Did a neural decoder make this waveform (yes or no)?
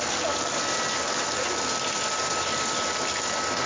no